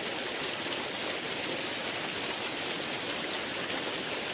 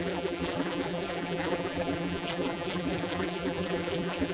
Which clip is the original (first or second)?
first